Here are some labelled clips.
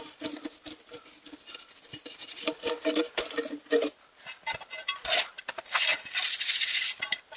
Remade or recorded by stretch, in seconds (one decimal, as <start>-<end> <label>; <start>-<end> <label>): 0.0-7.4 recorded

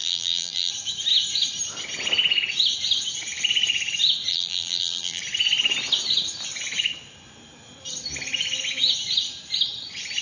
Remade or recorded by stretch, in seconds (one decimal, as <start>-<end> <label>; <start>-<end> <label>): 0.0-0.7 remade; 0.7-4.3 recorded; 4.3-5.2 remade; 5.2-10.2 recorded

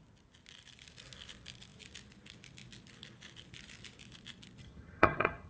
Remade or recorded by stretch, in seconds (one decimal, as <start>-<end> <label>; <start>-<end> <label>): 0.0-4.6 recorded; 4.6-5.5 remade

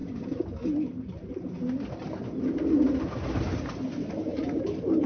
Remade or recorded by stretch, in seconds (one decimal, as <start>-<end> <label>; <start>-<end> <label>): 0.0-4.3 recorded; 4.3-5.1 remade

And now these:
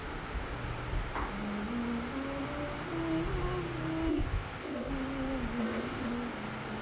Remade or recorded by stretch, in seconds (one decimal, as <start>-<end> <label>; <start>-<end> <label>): 0.0-4.1 recorded; 4.1-4.9 remade; 4.9-5.6 recorded; 5.6-6.1 remade; 6.1-6.8 recorded

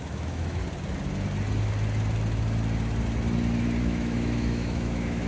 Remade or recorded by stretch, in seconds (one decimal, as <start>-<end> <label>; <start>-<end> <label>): 0.0-0.6 remade; 0.6-3.8 recorded; 3.8-5.3 remade